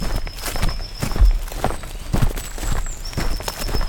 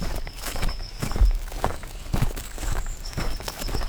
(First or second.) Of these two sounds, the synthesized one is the second